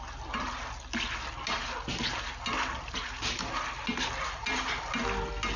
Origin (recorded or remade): recorded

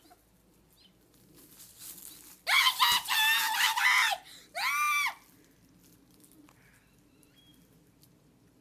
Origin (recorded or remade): recorded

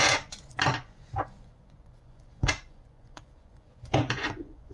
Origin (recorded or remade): remade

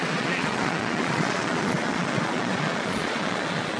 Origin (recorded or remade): remade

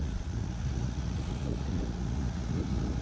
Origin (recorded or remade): remade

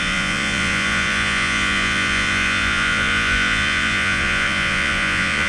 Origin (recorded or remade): remade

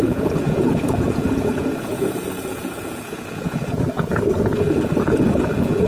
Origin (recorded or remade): remade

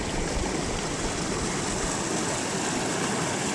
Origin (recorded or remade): recorded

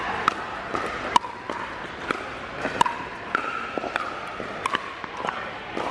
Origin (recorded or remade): recorded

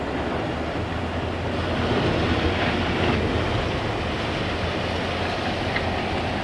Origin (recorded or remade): recorded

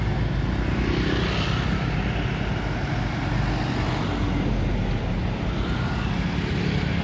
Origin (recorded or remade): recorded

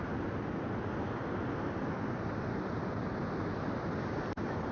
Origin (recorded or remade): recorded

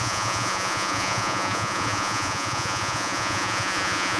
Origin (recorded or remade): remade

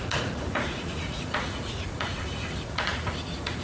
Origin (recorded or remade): remade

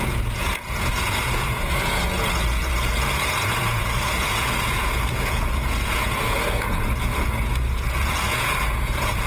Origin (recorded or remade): remade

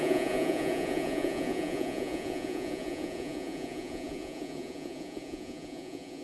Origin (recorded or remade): remade